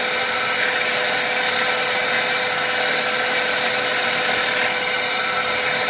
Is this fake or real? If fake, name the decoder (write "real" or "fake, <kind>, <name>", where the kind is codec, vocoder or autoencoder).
real